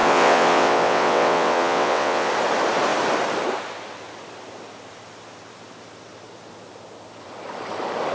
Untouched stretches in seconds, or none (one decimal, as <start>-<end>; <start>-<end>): 2.3-8.1